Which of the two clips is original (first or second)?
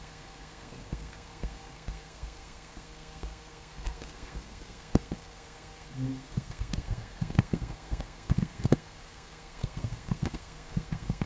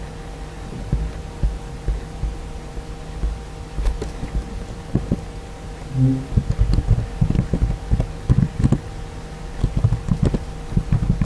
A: second